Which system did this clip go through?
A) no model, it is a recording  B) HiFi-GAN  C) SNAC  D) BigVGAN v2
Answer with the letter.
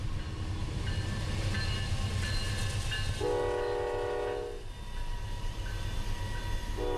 A